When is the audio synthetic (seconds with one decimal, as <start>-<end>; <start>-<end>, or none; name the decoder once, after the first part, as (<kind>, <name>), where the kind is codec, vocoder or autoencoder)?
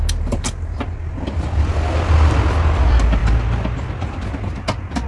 none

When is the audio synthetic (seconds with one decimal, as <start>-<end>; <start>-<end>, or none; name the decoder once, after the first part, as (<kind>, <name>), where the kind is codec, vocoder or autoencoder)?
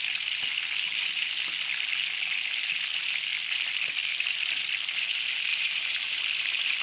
5.5-6.2 (vocoder, BigVGAN v2)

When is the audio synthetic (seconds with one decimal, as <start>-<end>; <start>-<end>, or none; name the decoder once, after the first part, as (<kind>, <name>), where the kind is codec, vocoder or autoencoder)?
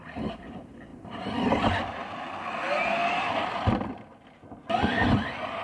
none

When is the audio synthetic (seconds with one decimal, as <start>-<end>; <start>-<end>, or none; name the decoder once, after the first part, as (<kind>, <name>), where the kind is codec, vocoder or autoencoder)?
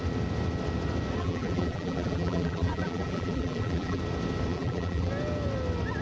1.2-4.0 (vocoder, BigVGAN v2); 4.5-5.1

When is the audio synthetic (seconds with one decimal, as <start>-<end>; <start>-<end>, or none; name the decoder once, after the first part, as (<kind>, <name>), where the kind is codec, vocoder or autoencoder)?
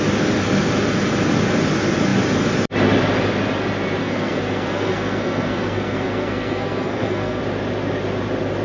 4.0-7.4 (codec, SNAC)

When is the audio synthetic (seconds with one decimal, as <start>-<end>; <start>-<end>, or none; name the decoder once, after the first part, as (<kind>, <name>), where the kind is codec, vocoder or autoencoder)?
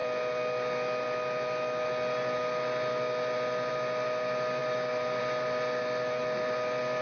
none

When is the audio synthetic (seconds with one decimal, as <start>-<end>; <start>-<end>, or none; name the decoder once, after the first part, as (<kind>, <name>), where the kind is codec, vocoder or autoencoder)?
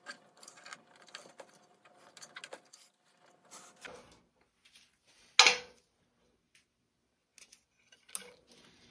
none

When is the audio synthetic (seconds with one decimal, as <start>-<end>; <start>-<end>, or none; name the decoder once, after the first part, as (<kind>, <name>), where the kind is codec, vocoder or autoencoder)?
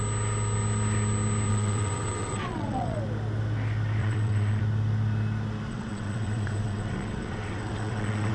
1.5-3.0 (vocoder, WaveNeXt); 4.0-4.6; 5.7-8.3